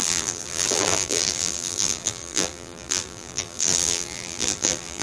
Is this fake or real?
fake